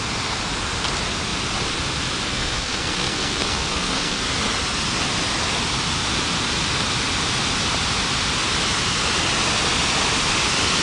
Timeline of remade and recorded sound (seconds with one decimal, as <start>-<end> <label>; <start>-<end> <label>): 0.0-2.3 recorded; 2.3-4.2 remade; 4.2-10.8 recorded

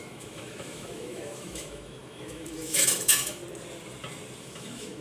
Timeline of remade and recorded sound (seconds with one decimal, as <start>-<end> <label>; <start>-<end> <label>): 0.0-3.4 remade; 3.4-4.4 recorded; 4.4-5.0 remade